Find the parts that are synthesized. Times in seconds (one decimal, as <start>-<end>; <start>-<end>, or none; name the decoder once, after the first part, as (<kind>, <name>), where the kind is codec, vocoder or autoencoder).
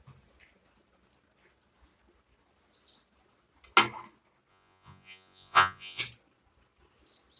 4.5-6.0 (vocoder, Vocos)